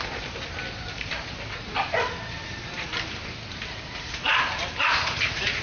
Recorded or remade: recorded